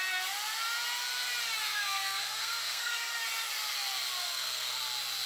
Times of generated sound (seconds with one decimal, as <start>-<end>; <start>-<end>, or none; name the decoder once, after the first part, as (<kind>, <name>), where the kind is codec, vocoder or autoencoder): 1.6-3.1 (codec, SNAC); 4.2-4.8